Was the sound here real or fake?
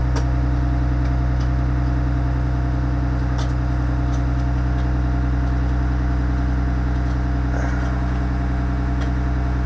real